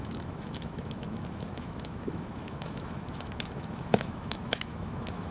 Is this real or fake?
fake